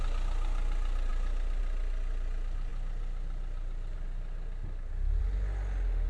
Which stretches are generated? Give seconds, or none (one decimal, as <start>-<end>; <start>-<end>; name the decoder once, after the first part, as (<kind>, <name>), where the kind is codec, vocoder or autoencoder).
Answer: none